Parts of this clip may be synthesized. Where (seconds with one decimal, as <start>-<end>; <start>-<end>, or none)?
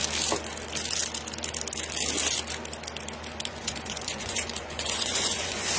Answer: 3.5-5.8